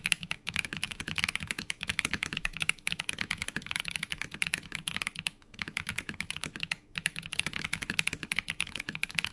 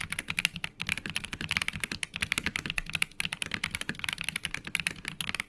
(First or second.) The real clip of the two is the second